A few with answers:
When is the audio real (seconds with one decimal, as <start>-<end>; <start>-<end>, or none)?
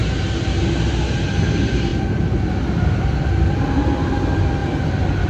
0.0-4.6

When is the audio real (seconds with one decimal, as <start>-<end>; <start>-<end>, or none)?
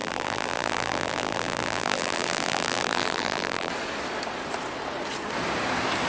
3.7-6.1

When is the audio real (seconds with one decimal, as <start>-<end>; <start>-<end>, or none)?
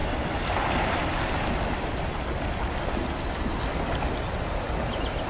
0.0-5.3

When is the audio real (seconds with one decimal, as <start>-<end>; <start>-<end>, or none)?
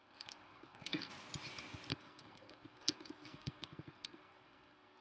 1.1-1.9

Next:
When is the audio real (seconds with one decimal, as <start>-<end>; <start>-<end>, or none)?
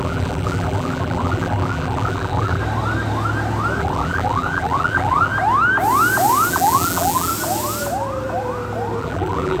2.6-3.8; 5.3-6.5; 7.3-9.0